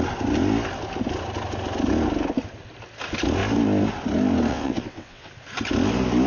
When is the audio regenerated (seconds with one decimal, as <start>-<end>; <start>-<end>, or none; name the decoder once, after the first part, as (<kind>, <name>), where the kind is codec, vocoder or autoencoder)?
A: 4.5-5.3 (vocoder, WaveNeXt)